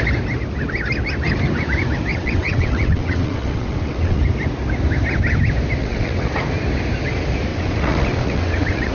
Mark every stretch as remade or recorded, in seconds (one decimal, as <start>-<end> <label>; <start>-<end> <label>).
0.0-2.1 recorded; 2.1-4.2 remade; 4.2-5.8 recorded; 5.8-6.3 remade; 6.3-7.5 recorded; 7.5-8.9 remade